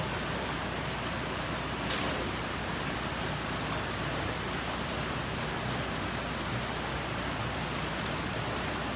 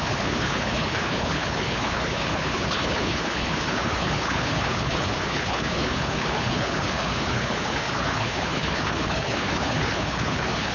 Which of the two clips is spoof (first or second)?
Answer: second